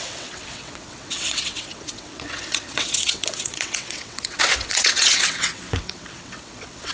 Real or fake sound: fake